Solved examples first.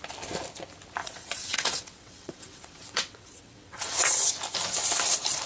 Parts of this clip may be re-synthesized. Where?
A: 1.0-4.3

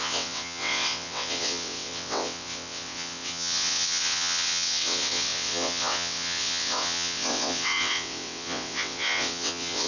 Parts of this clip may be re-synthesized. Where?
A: 0.0-9.9

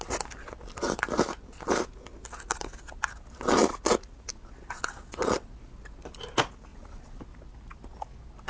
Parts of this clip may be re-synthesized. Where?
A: 5.0-5.5; 6.7-7.2

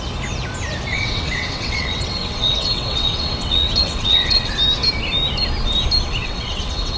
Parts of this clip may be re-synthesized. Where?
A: 0.9-4.5; 6.2-7.0

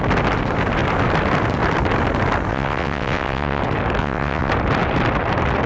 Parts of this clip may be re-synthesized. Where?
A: 2.5-3.6; 4.0-4.5

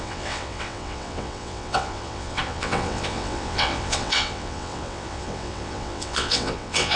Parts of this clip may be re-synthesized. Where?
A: 0.0-7.0

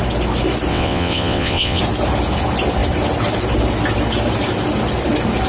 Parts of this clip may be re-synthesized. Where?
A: 0.7-1.8

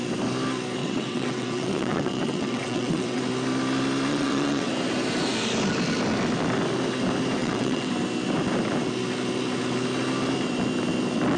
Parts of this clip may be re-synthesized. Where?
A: 0.8-3.2; 4.1-4.7; 7.4-7.9